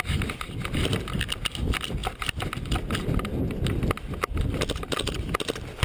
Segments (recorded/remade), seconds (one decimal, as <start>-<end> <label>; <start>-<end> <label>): 0.0-5.8 recorded